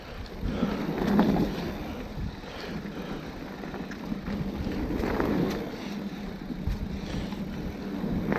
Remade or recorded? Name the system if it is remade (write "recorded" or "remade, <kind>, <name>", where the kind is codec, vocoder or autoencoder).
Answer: recorded